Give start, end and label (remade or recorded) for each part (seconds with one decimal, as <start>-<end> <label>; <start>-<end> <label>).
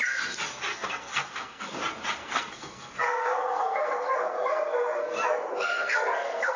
0.0-0.7 recorded; 0.7-1.8 remade; 1.8-2.2 recorded; 2.2-6.6 remade